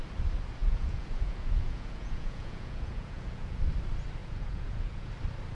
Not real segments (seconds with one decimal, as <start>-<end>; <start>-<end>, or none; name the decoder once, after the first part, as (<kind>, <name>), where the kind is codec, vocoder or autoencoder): 0.6-3.6 (vocoder, Vocos); 4.2-5.1